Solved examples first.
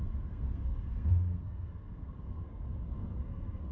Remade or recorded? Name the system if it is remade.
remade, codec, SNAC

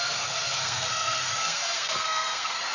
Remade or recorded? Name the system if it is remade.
remade, codec, SNAC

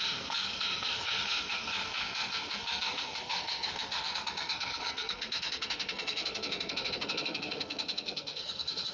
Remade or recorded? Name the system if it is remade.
remade, codec, SNAC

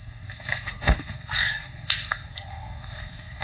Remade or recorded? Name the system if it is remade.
remade, codec, SNAC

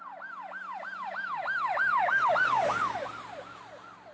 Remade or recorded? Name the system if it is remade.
recorded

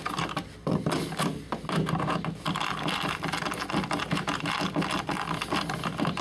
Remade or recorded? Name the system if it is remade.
recorded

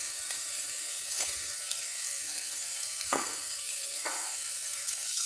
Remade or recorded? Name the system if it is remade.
remade, codec, SNAC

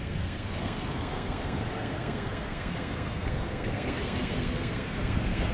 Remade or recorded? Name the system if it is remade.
remade, codec, SNAC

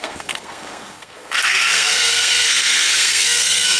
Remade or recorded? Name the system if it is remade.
remade, codec, SNAC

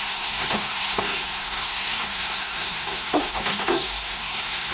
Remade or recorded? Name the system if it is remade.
remade, codec, SNAC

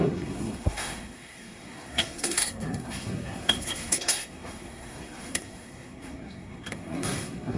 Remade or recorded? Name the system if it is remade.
remade, codec, SNAC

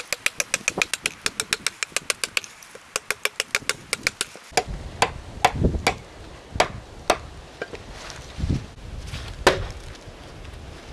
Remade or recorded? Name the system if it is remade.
recorded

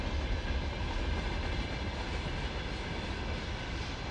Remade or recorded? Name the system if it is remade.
recorded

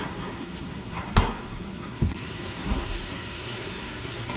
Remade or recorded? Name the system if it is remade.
remade, codec, SNAC